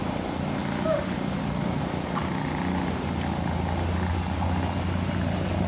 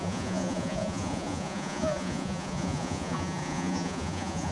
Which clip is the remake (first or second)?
second